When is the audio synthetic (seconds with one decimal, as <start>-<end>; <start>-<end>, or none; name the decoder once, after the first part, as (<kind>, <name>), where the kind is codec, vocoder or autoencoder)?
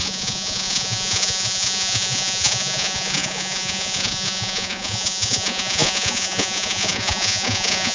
0.0-7.9 (vocoder, Vocos)